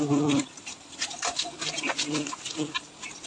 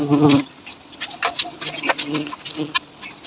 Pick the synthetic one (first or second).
first